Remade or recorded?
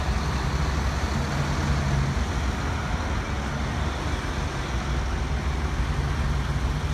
recorded